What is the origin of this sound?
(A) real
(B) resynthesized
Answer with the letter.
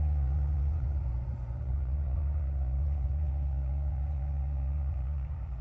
B